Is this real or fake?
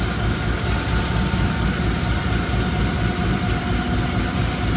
real